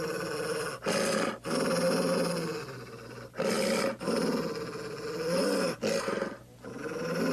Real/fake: real